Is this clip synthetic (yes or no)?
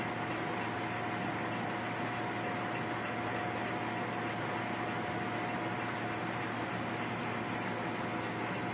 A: no